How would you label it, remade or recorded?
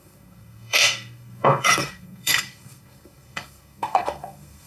remade